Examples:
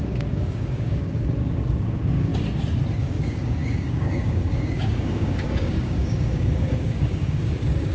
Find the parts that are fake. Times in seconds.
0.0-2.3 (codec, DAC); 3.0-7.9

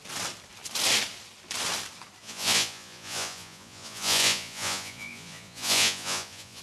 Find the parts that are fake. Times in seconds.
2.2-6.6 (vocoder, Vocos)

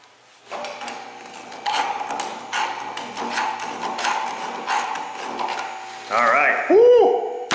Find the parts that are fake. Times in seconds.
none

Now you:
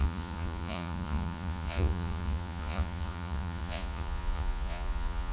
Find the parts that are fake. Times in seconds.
0.0-5.3 (vocoder, Vocos)

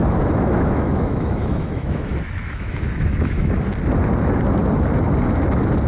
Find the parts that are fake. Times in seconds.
0.0-3.5 (autoencoder, DAC-VAE)